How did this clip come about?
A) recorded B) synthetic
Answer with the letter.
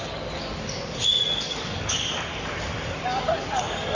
B